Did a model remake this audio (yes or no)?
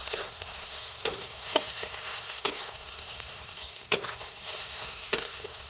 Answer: yes